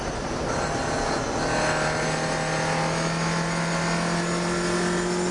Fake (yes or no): no